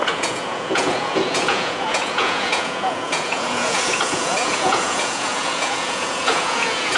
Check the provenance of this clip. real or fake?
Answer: fake